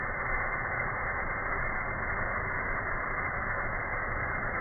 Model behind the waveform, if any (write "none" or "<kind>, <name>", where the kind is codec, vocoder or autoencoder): none